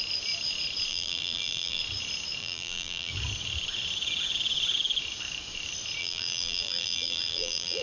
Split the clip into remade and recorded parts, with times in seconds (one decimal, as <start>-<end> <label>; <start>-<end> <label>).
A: 0.0-0.9 recorded; 0.9-1.8 remade; 1.8-2.4 recorded; 2.4-3.1 remade; 3.1-6.0 recorded; 6.0-7.8 remade